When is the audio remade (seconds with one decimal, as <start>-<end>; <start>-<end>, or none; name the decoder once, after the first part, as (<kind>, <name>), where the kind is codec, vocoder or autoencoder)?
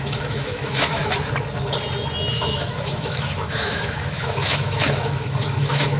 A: 0.0-1.0 (autoencoder, DAC-VAE); 2.3-6.0